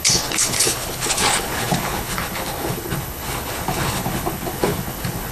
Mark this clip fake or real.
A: fake